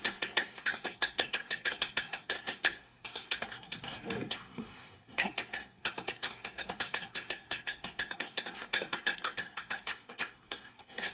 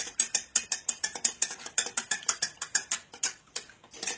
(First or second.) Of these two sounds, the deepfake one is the first